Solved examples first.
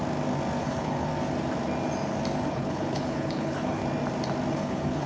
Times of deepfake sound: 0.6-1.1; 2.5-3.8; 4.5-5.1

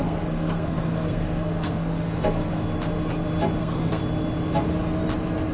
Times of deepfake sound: 0.0-2.6; 3.6-4.0

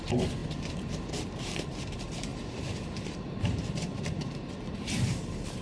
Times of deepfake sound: 0.0-0.4; 1.1-2.3; 3.5-5.6

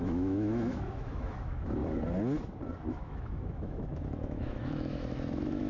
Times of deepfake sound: 0.0-1.8; 2.9-5.7

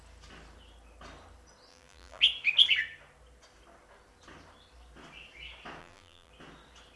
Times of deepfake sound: 1.7-2.2; 5.8-6.3

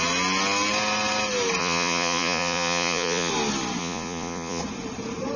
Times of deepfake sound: 1.6-3.3; 3.8-4.6

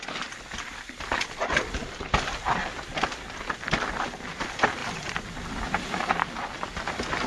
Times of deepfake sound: none